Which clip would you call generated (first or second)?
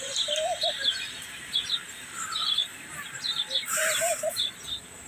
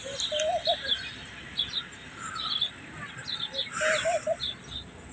first